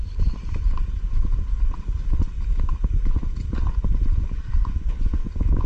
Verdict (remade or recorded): recorded